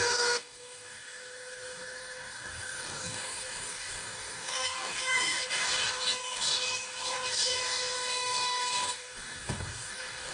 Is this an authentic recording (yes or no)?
no